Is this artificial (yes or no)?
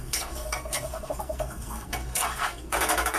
yes